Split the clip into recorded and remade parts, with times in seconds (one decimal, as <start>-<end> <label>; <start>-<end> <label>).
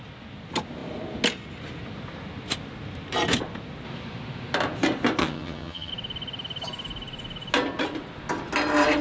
0.0-5.2 recorded; 5.2-5.9 remade; 5.9-9.0 recorded